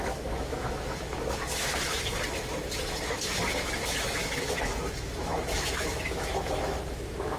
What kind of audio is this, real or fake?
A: fake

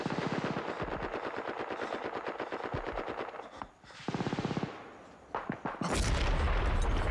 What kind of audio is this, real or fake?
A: real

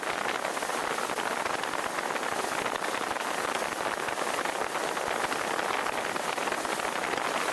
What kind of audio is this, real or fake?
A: real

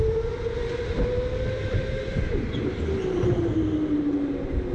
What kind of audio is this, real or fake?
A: real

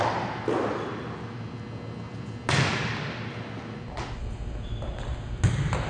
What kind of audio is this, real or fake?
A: real